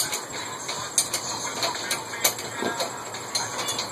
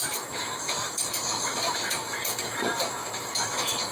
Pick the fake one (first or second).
second